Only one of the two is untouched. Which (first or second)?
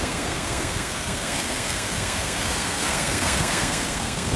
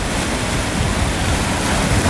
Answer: second